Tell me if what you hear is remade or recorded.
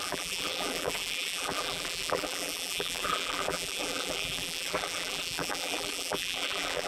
remade